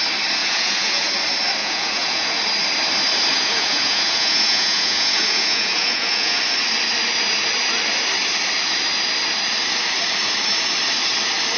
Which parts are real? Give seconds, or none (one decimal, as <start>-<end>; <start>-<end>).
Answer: 0.0-0.4; 1.1-1.6; 2.4-3.3; 6.4-11.6